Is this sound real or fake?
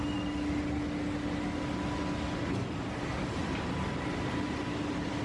real